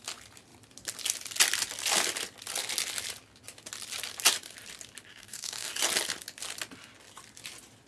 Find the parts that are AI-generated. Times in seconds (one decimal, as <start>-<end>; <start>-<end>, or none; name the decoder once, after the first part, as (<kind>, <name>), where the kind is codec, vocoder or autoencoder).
5.1-5.7 (codec, DAC)